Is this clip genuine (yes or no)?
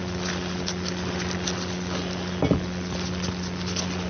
yes